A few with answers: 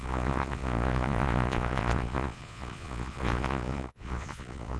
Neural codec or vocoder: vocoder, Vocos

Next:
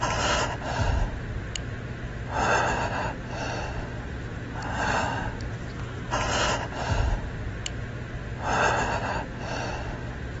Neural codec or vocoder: none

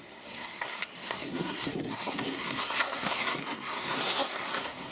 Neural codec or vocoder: codec, SNAC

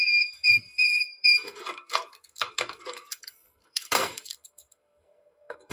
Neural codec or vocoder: codec, SNAC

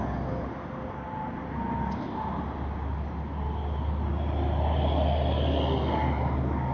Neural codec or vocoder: none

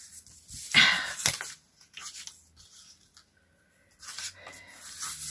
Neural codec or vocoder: none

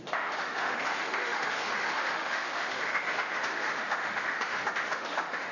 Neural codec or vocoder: autoencoder, DAC-VAE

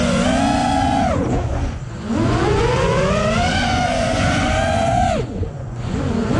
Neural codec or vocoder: vocoder, Vocos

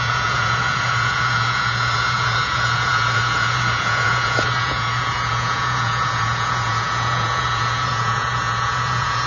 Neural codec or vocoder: vocoder, Vocos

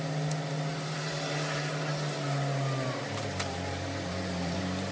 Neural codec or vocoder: none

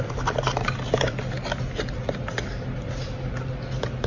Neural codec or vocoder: none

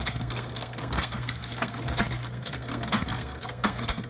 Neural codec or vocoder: codec, SNAC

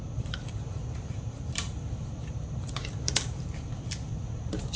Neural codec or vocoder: vocoder, BigVGAN v2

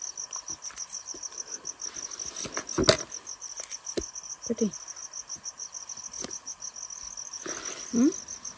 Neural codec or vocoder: none